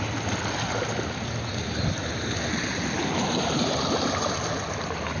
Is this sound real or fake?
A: real